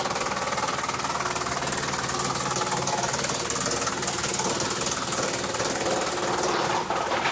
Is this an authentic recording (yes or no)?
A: yes